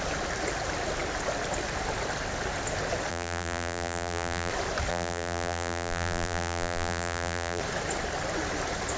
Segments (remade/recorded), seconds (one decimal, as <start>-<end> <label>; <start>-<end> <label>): 0.0-3.1 recorded; 3.1-4.5 remade; 4.5-4.9 recorded; 4.9-7.6 remade; 7.6-9.0 recorded